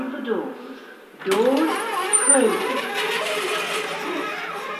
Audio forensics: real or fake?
real